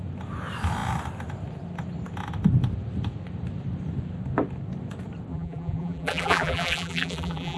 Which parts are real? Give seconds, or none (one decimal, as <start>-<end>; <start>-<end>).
0.0-5.3